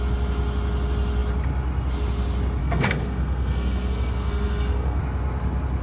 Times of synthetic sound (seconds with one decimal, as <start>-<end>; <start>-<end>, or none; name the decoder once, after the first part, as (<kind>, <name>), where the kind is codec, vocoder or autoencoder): 2.6-5.0 (codec, SNAC)